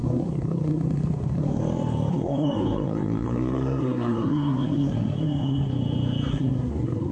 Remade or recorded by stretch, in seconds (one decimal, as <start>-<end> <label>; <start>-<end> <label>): 0.0-1.6 remade; 1.6-2.1 recorded; 2.1-5.7 remade; 5.7-6.3 recorded; 6.3-7.1 remade